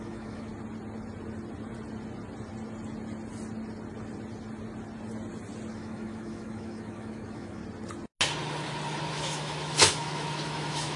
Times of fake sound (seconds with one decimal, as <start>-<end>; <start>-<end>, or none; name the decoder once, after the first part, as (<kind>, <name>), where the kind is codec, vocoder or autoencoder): 0.0-0.5 (autoencoder, DAC-VAE); 5.7-7.6; 9.1-11.0

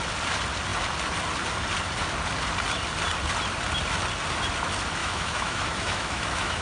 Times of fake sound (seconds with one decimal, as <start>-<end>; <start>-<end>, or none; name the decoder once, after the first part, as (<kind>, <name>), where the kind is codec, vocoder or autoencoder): 5.0-6.6 (autoencoder, DAC-VAE)

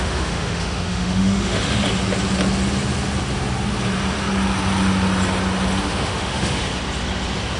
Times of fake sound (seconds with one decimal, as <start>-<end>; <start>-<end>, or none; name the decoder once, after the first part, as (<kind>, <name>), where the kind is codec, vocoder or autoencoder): 0.0-1.8 (autoencoder, DAC-VAE); 5.8-6.6

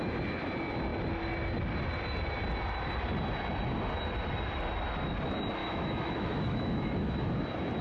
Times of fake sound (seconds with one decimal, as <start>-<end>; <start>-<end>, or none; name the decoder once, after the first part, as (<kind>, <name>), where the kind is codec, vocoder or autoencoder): 5.6-7.3 (autoencoder, DAC-VAE)

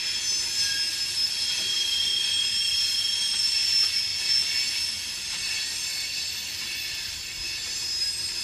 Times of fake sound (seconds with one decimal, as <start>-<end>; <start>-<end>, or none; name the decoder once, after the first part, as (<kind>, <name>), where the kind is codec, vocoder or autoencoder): none